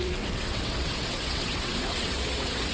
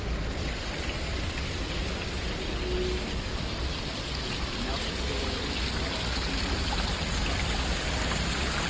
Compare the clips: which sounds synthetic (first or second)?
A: first